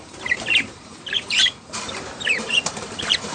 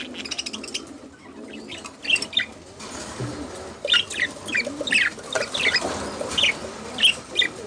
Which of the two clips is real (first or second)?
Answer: second